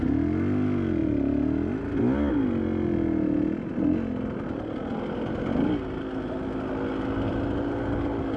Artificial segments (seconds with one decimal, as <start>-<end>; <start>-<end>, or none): none